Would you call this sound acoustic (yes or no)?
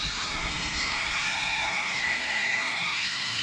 no